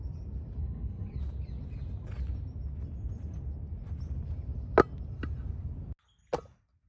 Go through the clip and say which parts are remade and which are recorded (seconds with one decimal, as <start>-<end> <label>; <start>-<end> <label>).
0.0-0.6 recorded; 0.6-1.2 remade; 1.2-6.9 recorded